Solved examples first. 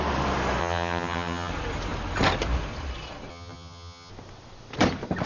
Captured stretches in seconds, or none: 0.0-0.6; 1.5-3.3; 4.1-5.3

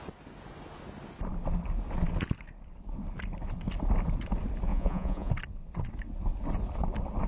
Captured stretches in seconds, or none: 0.0-4.7; 5.3-7.3

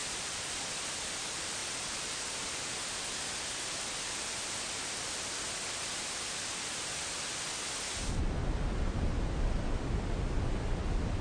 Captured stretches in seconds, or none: 0.7-11.2

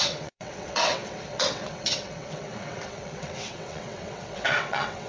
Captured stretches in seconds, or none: none

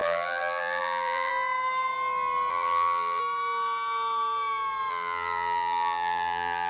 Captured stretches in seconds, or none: 1.3-2.5; 3.2-4.9

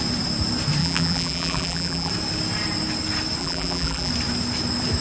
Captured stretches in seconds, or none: 0.0-0.8; 2.1-3.4; 4.1-5.0

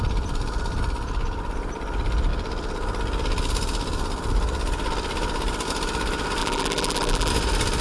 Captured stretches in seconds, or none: 0.0-6.4; 7.3-7.8